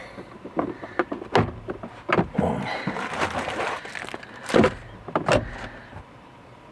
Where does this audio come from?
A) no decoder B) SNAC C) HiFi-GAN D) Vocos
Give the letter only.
A